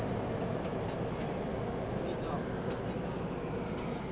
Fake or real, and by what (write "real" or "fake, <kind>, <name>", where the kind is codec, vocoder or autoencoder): real